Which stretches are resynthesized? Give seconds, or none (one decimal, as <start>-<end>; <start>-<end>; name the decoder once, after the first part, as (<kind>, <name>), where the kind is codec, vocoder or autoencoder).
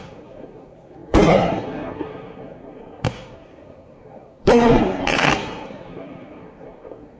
0.0-7.2 (codec, SNAC)